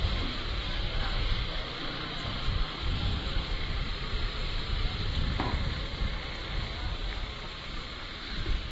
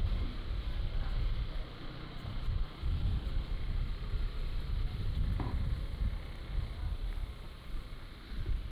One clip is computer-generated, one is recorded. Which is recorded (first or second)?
second